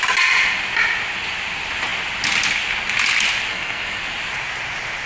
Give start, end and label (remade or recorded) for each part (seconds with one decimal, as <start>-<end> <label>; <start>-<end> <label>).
0.0-3.5 recorded; 3.5-4.0 remade; 4.0-5.1 recorded